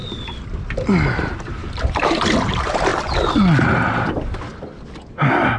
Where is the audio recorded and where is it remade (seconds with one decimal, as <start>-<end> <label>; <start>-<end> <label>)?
0.0-1.2 recorded; 1.2-1.6 remade; 1.6-2.5 recorded; 2.5-2.9 remade; 2.9-3.6 recorded; 3.6-4.5 remade; 4.5-5.6 recorded